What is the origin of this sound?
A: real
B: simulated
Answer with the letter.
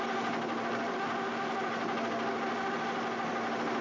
A